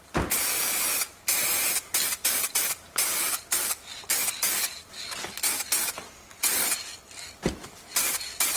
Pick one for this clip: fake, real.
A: real